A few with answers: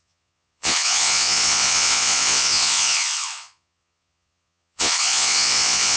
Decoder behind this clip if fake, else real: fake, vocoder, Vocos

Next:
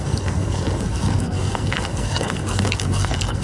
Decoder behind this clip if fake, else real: fake, codec, SNAC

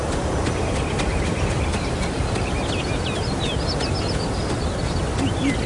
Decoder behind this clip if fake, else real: real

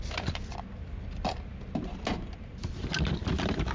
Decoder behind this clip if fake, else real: real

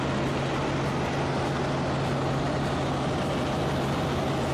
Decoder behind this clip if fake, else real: real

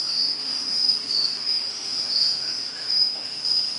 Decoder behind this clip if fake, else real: fake, autoencoder, DAC-VAE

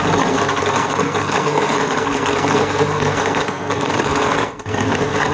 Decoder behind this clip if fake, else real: fake, codec, SNAC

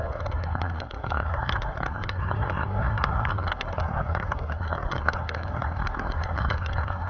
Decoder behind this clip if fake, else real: fake, codec, SNAC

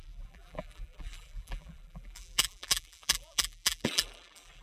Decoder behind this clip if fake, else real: fake, vocoder, BigVGAN v2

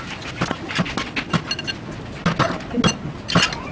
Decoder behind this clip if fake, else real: real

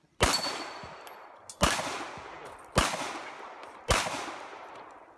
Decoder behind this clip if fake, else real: real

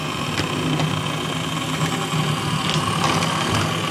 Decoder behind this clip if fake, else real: real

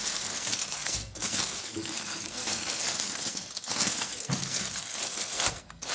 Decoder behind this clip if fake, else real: fake, codec, SNAC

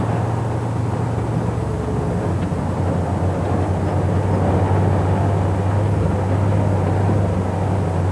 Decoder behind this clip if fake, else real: real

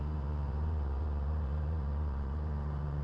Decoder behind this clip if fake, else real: fake, vocoder, Vocos